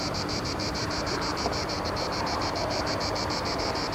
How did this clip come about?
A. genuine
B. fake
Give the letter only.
B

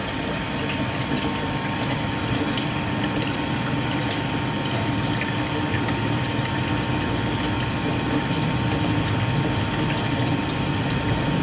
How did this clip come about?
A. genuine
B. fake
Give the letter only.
A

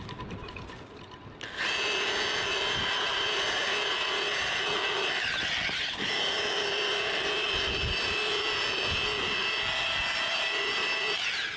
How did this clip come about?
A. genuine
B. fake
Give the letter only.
A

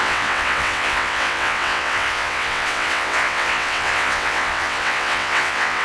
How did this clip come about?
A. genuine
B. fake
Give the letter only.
B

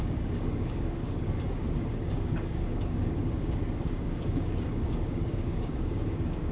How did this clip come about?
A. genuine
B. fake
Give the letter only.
B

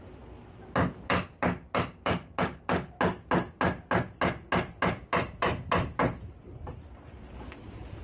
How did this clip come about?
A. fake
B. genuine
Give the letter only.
B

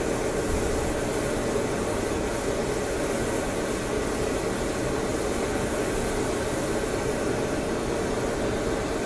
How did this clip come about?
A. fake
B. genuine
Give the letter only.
B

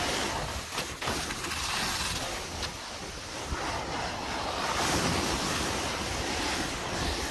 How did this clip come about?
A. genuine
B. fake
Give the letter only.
A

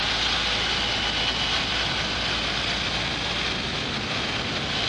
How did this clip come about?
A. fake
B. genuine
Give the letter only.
B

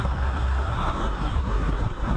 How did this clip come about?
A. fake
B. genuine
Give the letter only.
A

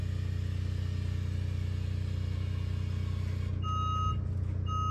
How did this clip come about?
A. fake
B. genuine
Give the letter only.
B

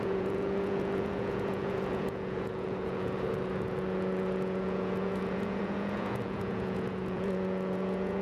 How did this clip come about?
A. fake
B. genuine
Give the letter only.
A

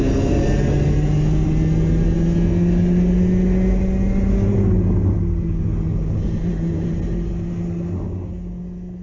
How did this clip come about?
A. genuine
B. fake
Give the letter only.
A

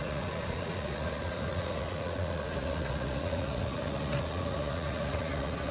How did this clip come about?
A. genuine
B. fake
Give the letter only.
B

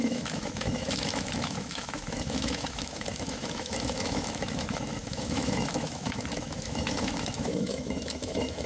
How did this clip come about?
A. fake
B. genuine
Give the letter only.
A